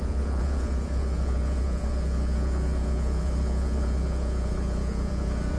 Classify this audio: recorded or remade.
remade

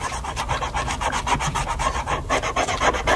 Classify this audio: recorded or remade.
remade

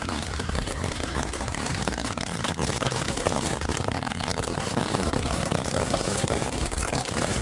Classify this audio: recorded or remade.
remade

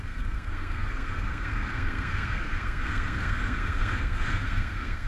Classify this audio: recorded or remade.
remade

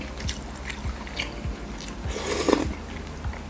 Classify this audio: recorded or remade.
recorded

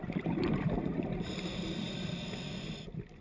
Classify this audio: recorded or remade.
recorded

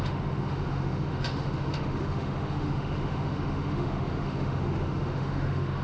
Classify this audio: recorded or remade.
remade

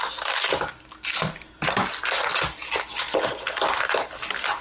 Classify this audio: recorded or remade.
recorded